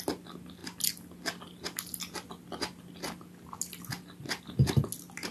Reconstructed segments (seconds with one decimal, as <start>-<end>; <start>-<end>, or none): none